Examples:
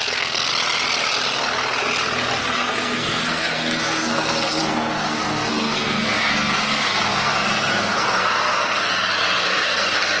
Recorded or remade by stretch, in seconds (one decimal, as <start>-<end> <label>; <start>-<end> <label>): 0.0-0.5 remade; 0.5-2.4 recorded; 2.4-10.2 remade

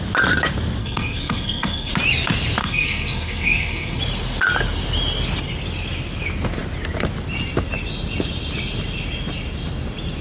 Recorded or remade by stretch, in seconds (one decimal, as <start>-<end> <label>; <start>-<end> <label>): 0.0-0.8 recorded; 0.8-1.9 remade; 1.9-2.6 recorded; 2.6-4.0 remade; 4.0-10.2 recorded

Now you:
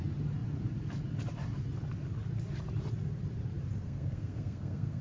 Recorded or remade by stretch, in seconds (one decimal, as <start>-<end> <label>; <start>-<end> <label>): 0.0-3.8 recorded; 3.8-5.0 remade